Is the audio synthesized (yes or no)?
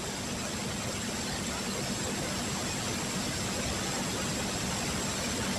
no